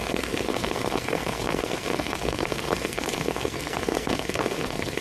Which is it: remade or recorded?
remade